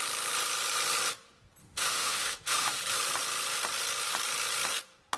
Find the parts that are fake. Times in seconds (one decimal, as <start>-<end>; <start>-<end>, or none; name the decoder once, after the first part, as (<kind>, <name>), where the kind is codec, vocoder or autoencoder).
1.6-2.8 (autoencoder, DAC-VAE)